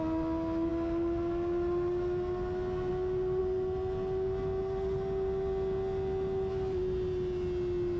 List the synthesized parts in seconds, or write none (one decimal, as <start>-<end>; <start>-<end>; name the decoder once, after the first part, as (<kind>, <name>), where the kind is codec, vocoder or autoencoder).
none